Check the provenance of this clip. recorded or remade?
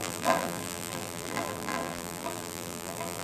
remade